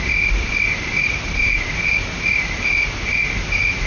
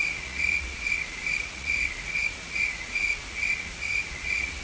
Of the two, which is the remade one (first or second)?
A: second